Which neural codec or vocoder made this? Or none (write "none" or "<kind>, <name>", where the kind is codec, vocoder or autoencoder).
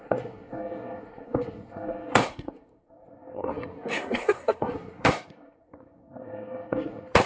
codec, SNAC